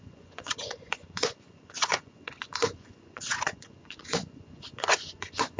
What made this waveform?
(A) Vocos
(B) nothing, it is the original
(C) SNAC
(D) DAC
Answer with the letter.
A